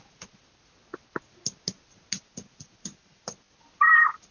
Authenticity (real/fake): real